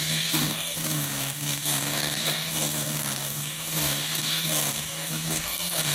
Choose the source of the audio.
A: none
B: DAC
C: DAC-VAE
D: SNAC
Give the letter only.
B